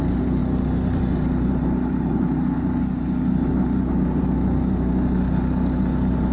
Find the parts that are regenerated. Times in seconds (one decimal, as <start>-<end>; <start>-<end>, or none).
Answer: none